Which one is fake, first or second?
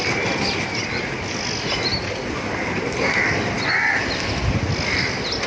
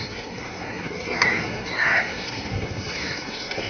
second